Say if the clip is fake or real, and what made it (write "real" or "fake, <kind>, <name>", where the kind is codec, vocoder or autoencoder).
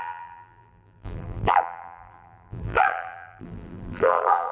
fake, vocoder, BigVGAN v2